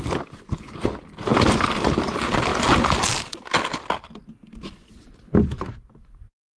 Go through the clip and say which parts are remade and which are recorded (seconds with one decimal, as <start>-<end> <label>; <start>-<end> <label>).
0.0-6.6 recorded